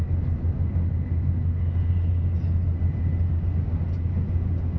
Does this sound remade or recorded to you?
recorded